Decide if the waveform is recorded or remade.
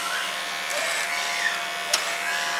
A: recorded